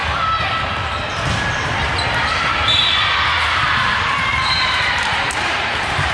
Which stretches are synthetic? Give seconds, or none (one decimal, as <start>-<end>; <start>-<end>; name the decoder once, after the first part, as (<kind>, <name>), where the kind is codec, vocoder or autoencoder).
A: 3.7-6.1 (vocoder, BigVGAN v2)